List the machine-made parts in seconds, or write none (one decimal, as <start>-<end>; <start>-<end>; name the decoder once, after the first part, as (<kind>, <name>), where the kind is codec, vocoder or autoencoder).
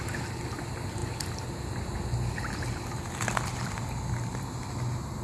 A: none